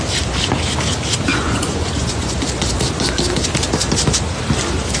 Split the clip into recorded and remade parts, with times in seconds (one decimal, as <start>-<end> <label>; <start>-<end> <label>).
0.0-1.3 recorded; 1.3-2.4 remade; 2.4-5.0 recorded